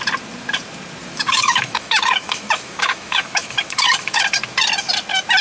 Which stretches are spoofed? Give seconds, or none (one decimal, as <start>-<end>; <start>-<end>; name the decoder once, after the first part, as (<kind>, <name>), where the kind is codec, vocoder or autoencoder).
1.0-4.2 (autoencoder, DAC-VAE)